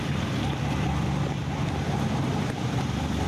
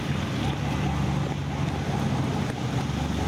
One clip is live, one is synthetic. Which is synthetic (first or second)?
first